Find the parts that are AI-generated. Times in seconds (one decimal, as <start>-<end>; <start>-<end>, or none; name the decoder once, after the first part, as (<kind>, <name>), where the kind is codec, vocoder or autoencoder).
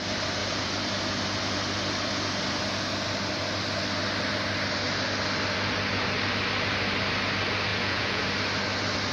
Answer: 7.7-8.2 (vocoder, Vocos)